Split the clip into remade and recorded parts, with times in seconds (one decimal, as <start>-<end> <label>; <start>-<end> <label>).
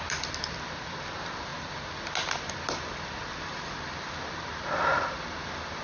0.0-5.8 recorded